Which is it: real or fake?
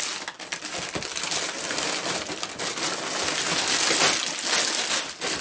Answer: real